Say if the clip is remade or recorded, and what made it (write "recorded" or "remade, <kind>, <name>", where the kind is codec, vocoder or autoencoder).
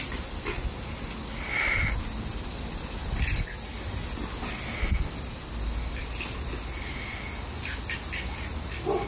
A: recorded